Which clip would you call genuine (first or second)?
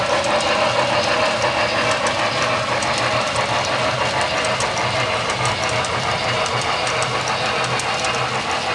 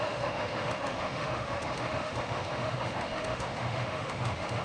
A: first